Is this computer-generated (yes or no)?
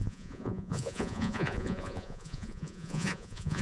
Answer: yes